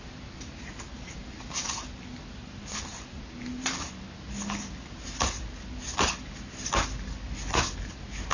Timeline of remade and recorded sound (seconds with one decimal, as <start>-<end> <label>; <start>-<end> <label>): 0.0-8.3 recorded

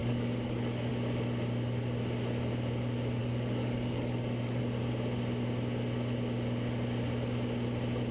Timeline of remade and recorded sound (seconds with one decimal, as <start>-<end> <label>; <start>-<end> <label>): 0.0-0.9 remade; 0.9-3.2 recorded; 3.2-4.6 remade; 4.6-8.1 recorded

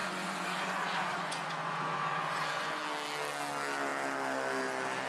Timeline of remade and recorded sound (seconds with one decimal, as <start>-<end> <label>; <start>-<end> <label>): 0.0-2.8 remade; 2.8-5.1 recorded

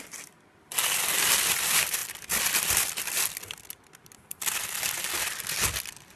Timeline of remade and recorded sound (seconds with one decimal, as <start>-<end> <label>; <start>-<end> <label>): 0.0-6.2 recorded

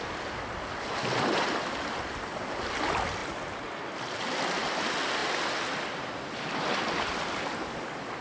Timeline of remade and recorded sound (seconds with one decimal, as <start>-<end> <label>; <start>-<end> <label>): 0.0-8.2 recorded

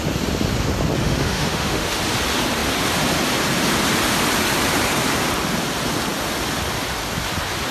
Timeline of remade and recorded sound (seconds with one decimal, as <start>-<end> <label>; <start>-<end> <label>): 0.0-1.0 recorded; 1.0-2.0 remade; 2.0-7.7 recorded